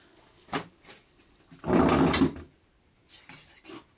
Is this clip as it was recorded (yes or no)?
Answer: yes